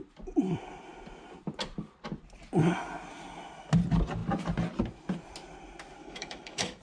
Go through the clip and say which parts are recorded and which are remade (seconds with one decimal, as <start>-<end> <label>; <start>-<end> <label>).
0.0-6.0 recorded; 6.0-6.8 remade